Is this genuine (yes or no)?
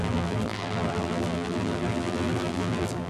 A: no